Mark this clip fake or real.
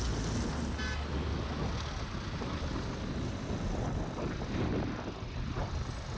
real